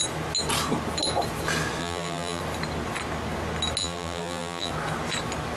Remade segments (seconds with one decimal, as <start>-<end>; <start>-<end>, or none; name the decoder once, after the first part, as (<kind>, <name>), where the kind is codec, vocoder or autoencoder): 1.8-2.4 (vocoder, BigVGAN v2); 3.8-4.7

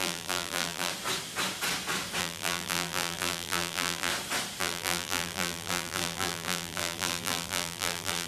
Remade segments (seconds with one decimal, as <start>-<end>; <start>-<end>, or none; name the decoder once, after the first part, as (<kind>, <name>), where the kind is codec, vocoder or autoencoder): 0.0-0.9 (vocoder, BigVGAN v2); 2.2-4.1; 4.6-8.3

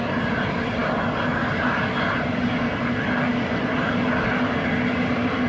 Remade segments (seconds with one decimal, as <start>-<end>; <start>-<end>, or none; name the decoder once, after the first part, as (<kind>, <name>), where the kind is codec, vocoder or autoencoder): none

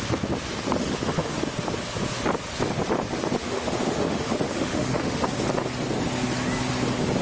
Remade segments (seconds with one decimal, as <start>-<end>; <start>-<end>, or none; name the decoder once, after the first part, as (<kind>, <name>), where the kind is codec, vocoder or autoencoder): 0.8-1.4 (autoencoder, DAC-VAE); 3.4-5.2

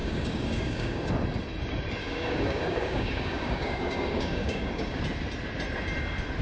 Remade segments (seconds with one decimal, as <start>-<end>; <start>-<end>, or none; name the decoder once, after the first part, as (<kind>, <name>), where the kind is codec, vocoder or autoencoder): 0.0-1.1 (codec, DAC); 2.0-5.0

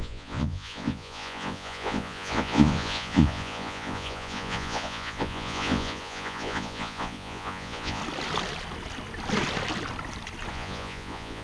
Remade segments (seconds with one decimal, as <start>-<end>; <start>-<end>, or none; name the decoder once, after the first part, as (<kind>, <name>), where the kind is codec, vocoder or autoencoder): 0.0-8.0 (vocoder, Vocos); 10.5-11.4

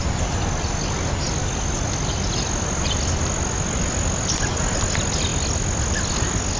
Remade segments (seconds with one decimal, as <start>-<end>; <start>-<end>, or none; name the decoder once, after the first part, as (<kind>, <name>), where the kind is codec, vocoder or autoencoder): none

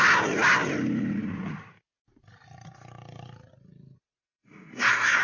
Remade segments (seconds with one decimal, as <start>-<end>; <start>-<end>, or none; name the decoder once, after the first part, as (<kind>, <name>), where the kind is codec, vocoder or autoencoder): 4.2-5.2 (codec, SNAC)